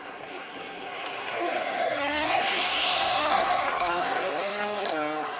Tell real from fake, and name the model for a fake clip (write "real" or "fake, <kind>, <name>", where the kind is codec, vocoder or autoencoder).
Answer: fake, codec, SNAC